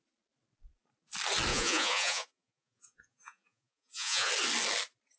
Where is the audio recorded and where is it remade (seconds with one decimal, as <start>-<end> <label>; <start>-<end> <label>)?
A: 0.0-1.5 recorded; 1.5-4.3 remade; 4.3-5.2 recorded